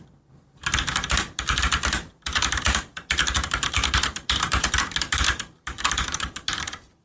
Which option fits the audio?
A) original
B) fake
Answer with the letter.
B